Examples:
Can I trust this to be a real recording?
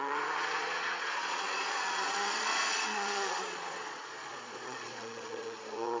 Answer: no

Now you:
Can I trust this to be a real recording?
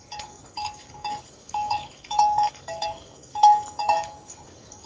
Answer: no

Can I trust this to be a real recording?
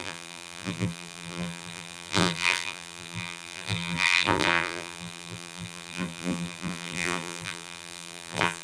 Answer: no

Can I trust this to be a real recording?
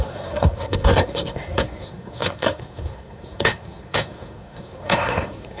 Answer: no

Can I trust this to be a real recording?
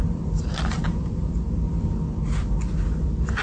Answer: yes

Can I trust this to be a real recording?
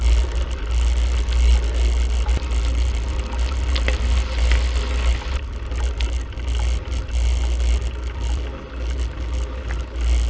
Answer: yes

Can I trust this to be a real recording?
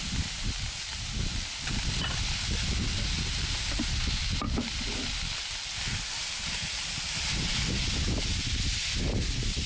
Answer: yes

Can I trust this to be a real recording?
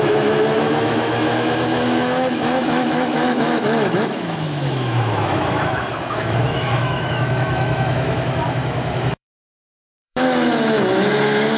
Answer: no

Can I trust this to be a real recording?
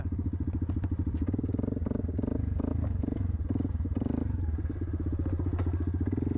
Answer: yes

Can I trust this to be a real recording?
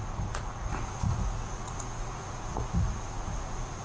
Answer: no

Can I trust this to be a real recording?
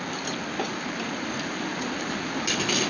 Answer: yes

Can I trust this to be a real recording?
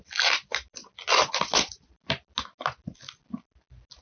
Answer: yes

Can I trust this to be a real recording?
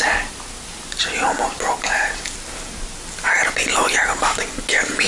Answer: yes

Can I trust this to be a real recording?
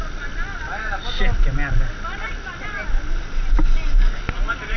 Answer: yes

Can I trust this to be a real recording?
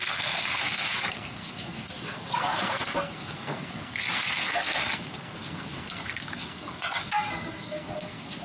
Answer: no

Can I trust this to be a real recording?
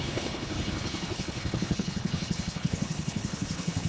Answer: no